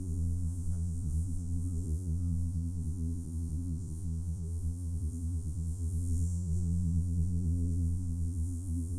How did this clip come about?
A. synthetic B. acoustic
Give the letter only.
A